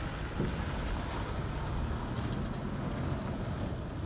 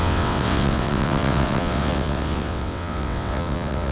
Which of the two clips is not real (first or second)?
second